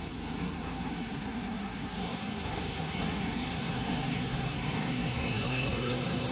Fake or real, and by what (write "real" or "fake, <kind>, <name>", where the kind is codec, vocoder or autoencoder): fake, codec, SNAC